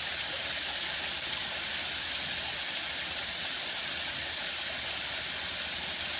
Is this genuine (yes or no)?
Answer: yes